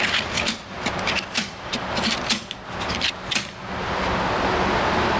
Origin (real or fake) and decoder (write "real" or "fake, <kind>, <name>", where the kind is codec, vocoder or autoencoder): real